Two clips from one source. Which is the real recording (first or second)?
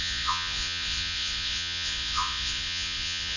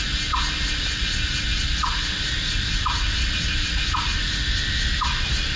second